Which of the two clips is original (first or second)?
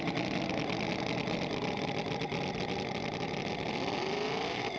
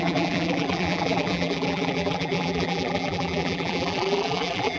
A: first